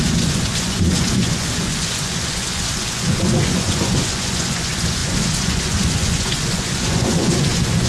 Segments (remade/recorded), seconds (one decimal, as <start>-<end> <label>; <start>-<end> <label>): 0.0-7.9 remade